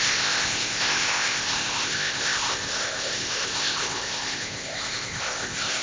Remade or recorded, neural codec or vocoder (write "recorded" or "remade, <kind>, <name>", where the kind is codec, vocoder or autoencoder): remade, codec, ZipCodec